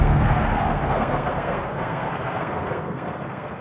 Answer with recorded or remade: remade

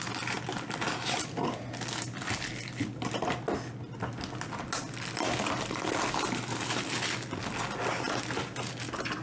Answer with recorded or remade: recorded